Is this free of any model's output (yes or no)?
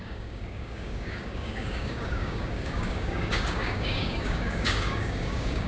no